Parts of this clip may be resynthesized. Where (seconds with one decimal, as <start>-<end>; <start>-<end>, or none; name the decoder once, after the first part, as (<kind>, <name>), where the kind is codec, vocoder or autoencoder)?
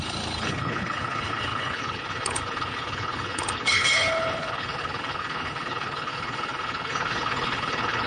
0.0-8.1 (codec, HILCodec)